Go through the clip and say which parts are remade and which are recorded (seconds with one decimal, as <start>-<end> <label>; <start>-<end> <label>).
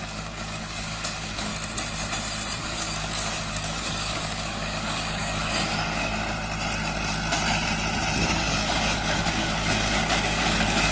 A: 0.0-1.5 remade; 1.5-2.6 recorded; 2.6-6.1 remade; 6.1-8.2 recorded; 8.2-10.9 remade